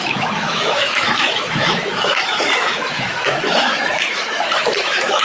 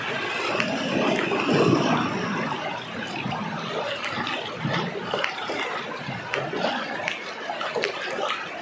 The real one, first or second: second